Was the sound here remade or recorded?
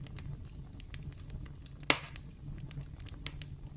recorded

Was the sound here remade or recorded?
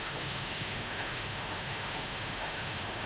remade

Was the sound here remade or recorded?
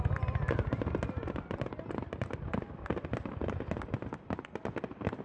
recorded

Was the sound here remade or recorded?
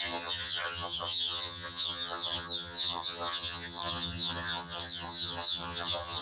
remade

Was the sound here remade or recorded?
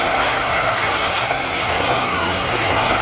remade